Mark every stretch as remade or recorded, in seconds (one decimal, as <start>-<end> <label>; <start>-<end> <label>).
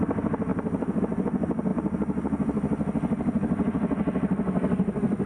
0.0-5.3 recorded